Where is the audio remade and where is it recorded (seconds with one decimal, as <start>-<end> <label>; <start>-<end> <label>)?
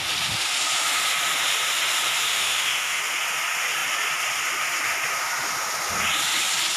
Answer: 0.0-2.3 recorded; 2.3-3.0 remade; 3.0-6.8 recorded